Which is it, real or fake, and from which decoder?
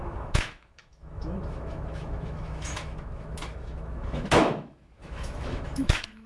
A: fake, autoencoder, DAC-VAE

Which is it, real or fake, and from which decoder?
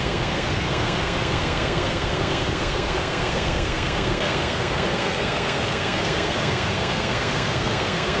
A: fake, codec, SNAC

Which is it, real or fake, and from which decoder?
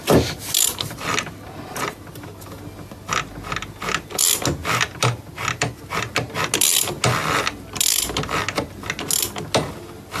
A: real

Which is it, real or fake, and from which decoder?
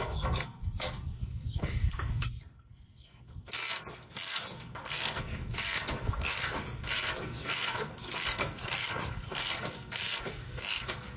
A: fake, codec, SNAC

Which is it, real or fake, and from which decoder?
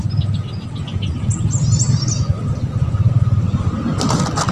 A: real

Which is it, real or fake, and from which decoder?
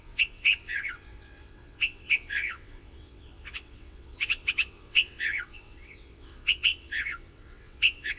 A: fake, vocoder, WaveNeXt